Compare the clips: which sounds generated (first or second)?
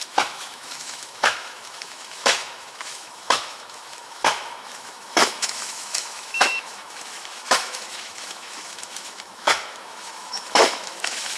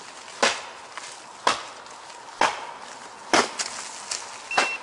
first